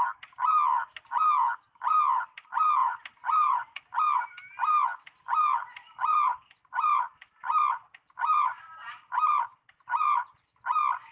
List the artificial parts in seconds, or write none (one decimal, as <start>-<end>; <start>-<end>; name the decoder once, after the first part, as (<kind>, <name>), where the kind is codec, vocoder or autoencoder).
2.8-4.0 (vocoder, BigVGAN v2); 6.1-10.4